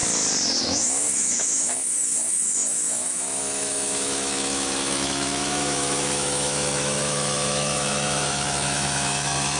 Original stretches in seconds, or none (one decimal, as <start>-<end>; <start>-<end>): 0.0-0.6

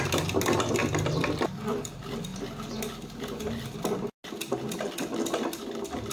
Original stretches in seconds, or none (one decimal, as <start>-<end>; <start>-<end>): 0.0-6.1

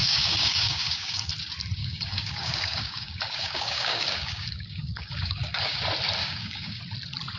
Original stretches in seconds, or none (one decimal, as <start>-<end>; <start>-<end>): 1.3-1.8; 5.8-6.2; 6.8-7.4

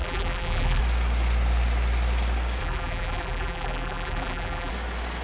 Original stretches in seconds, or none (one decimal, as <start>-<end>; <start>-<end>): 0.8-2.6; 4.7-5.2

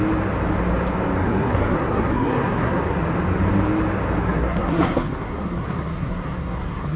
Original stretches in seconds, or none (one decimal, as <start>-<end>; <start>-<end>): 0.0-1.2; 3.0-4.2